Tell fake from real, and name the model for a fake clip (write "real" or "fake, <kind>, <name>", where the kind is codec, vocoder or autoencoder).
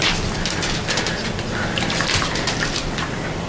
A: real